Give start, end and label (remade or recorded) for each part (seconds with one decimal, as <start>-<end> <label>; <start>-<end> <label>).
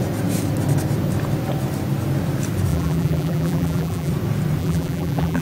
0.0-2.7 recorded; 2.7-4.1 remade; 4.1-4.6 recorded; 4.6-5.4 remade